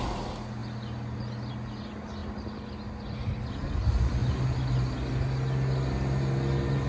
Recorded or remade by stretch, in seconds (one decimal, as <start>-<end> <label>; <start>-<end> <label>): 0.0-6.9 recorded